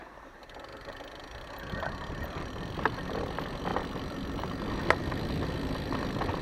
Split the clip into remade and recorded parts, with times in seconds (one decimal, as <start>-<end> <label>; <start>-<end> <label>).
0.0-6.4 recorded